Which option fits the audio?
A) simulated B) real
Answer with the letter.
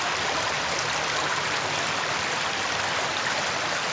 B